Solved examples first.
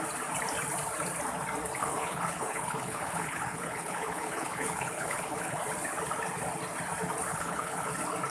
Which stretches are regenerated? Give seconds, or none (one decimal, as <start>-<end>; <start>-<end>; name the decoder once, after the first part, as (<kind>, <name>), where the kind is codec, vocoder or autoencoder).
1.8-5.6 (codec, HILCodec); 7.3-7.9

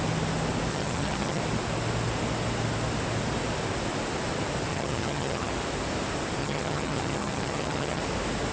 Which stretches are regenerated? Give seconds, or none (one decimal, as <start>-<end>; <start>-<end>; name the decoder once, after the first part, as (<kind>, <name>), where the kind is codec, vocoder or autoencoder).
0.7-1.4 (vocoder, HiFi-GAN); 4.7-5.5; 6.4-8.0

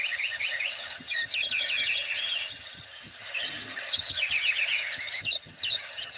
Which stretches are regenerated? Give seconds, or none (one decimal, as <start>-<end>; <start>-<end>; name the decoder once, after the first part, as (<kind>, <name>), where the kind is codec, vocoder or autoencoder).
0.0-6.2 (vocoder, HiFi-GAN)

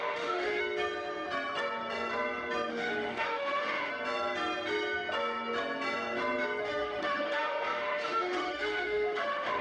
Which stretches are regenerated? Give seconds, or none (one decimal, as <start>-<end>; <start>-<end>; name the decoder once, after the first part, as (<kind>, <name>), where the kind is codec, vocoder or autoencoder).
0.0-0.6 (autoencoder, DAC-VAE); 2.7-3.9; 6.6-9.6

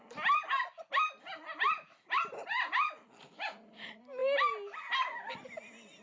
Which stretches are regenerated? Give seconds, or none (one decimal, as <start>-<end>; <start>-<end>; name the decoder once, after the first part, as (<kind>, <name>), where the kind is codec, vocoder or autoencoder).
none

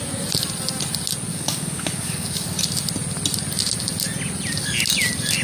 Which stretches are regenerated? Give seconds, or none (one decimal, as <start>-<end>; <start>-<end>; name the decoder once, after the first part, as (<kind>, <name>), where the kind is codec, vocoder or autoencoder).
1.3-2.6 (codec, DAC)

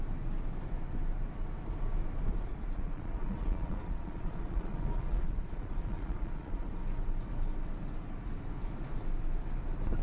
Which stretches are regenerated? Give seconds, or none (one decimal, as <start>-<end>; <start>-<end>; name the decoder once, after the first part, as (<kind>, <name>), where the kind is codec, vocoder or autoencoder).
2.5-6.7 (vocoder, Vocos)